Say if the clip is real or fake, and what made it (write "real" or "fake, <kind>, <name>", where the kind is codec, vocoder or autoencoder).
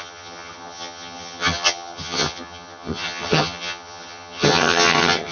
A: fake, vocoder, HiFi-GAN